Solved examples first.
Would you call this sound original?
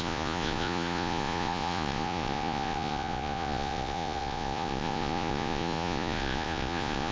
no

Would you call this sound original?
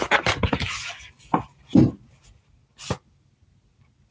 yes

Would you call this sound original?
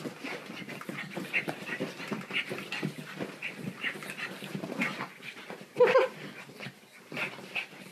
yes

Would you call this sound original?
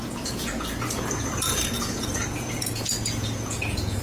no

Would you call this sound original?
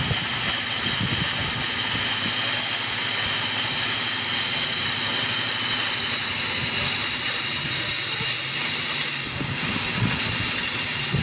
yes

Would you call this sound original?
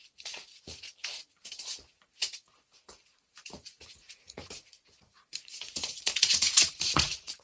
no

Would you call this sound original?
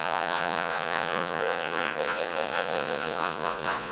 no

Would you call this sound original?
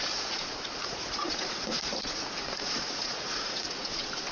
no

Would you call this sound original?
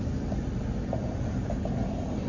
yes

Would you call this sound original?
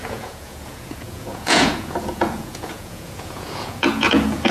no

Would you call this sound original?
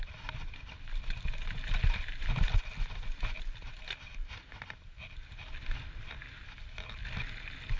yes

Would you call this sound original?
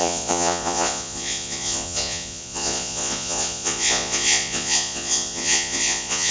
no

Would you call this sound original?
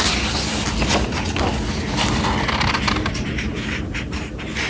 yes